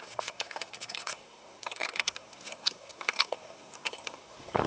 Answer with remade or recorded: remade